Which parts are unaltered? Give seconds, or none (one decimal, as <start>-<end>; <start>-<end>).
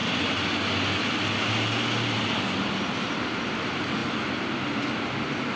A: 0.0-5.6